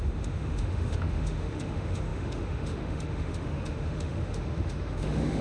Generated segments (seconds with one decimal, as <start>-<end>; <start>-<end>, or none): 0.0-5.4